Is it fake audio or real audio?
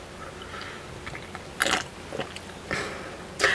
real